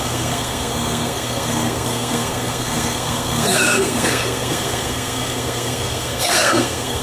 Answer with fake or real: fake